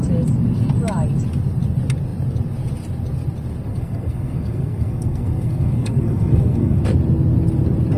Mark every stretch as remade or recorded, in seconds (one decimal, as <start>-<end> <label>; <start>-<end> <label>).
0.0-3.7 recorded; 3.7-6.8 remade; 6.8-8.0 recorded